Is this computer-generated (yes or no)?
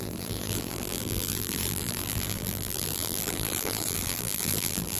yes